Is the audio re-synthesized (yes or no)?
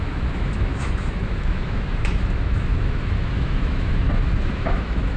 yes